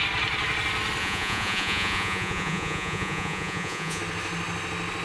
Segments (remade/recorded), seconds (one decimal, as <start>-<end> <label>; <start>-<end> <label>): 0.0-1.0 recorded; 1.0-4.0 remade; 4.0-5.0 recorded